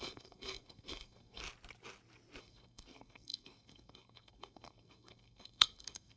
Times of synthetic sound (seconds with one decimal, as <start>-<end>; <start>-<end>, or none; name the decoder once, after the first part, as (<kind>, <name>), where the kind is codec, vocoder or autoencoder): 0.0-1.4 (codec, SNAC); 2.4-6.2